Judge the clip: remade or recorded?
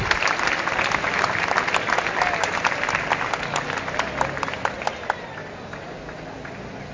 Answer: recorded